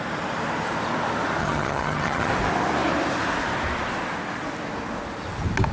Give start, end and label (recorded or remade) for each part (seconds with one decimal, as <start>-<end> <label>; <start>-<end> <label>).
0.0-1.4 recorded; 1.4-2.3 remade; 2.3-5.7 recorded